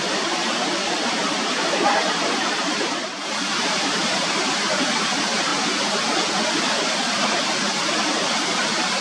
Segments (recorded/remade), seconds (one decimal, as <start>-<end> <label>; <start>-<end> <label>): 0.0-5.5 remade; 5.5-6.9 recorded; 6.9-7.6 remade; 7.6-8.6 recorded; 8.6-9.0 remade